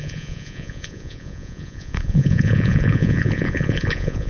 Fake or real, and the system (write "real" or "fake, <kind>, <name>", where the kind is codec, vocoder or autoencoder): fake, vocoder, Vocos